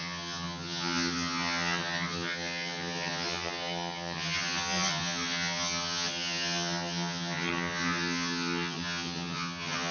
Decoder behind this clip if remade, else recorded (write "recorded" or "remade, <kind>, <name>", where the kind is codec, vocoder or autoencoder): remade, vocoder, HiFi-GAN